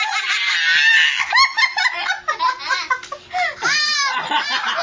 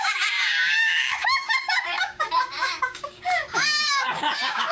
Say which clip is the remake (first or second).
second